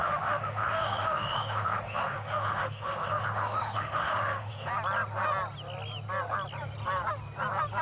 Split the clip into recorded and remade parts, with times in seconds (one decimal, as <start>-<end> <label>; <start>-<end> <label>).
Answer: 0.0-4.7 remade; 4.7-7.8 recorded